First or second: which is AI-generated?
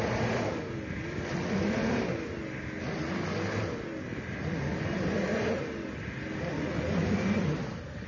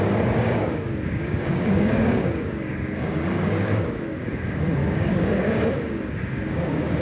second